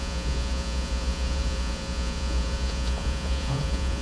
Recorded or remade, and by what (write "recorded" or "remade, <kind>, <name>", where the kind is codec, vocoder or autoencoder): remade, vocoder, Vocos